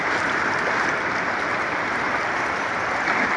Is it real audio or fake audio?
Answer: fake